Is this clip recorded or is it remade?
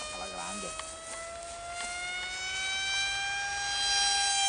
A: recorded